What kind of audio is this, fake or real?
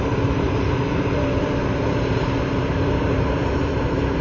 fake